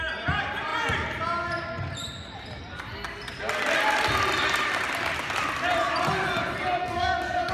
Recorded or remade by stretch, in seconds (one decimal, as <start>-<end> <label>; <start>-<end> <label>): 0.0-6.8 recorded; 6.8-7.5 remade

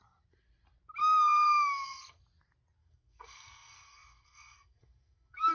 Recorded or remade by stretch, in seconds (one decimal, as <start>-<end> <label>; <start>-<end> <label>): 0.0-1.0 recorded; 1.0-2.2 remade; 2.2-2.8 recorded; 2.8-5.5 remade